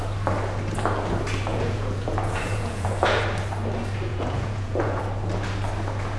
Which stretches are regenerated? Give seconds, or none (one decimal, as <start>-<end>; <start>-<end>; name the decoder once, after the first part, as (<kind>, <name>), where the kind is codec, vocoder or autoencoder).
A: 1.5-3.2 (vocoder, Vocos); 4.1-5.0